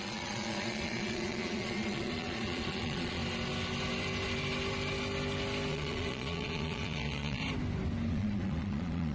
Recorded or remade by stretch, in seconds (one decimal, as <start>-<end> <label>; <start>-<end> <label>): 0.0-3.2 remade; 3.2-5.7 recorded; 5.7-7.4 remade; 7.4-8.1 recorded; 8.1-9.1 remade